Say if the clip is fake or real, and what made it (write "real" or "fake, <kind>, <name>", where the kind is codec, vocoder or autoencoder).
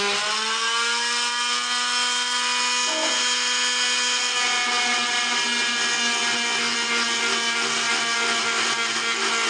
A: real